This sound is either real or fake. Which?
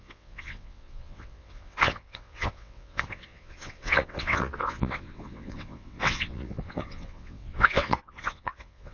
fake